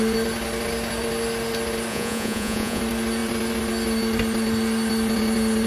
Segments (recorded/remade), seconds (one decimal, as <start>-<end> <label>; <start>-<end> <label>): 0.0-1.9 recorded; 1.9-2.8 remade; 2.8-5.7 recorded